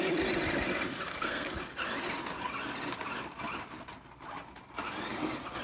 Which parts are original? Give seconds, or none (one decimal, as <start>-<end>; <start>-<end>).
0.0-1.1; 1.6-5.6